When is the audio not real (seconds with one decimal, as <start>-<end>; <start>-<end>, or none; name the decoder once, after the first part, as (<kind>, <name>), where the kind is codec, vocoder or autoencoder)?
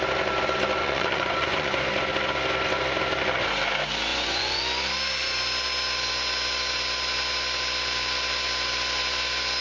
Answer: 0.8-1.8 (vocoder, Vocos); 4.1-4.6